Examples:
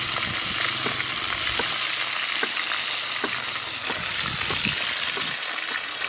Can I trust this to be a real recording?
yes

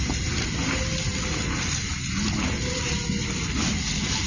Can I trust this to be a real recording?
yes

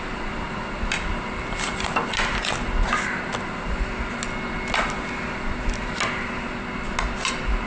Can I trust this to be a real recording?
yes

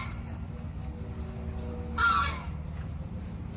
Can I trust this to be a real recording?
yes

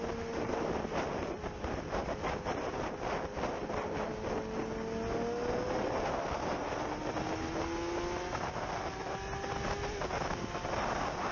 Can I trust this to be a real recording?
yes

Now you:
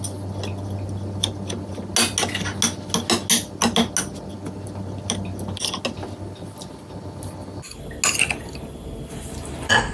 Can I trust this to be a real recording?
yes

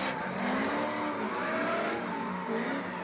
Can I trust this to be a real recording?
yes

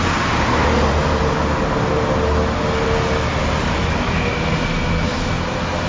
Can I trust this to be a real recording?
yes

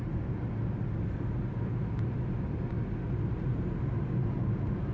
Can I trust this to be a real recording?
yes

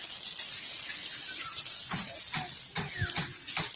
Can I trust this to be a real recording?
yes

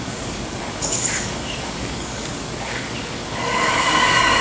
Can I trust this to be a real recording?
no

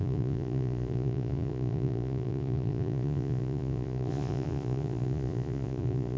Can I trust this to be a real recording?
no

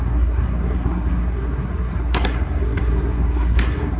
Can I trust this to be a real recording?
no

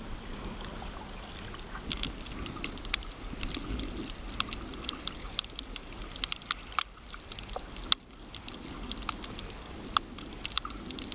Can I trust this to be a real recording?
yes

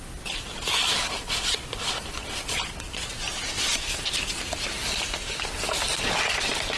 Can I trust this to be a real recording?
yes